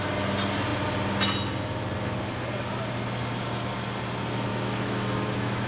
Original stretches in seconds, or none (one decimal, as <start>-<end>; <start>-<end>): 0.0-4.5